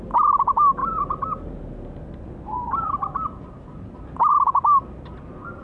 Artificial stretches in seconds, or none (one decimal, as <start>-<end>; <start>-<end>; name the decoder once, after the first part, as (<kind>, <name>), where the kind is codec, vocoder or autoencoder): none